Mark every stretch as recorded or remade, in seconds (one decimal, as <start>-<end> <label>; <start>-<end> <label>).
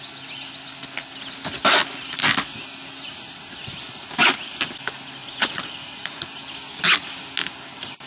0.0-5.2 recorded; 5.2-6.2 remade; 6.2-8.1 recorded